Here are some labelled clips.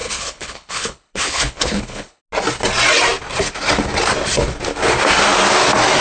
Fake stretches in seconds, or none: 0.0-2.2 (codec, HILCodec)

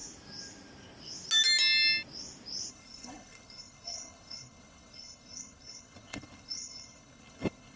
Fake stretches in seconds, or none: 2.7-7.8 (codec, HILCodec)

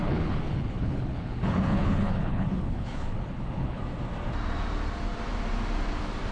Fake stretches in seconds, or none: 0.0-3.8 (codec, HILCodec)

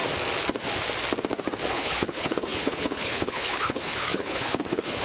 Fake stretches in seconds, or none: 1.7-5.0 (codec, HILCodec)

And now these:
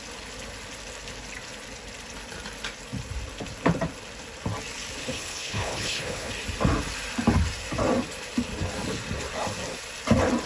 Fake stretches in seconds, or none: 5.0-6.3 (codec, HILCodec)

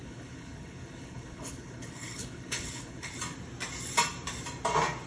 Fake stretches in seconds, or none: 0.0-3.1 (codec, HILCodec)